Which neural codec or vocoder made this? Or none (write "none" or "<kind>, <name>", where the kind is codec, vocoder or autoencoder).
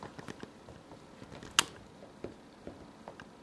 none